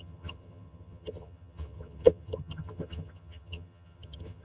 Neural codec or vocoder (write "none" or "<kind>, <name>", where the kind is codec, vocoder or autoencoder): vocoder, HiFi-GAN